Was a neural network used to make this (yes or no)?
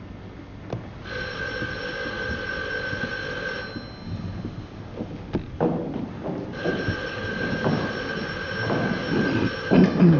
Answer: no